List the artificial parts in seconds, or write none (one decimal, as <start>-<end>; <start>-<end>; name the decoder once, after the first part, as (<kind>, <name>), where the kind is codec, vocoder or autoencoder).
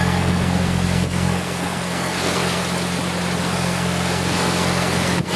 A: 0.0-2.6 (codec, SNAC); 3.4-5.4